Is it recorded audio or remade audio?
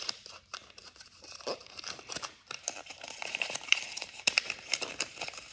remade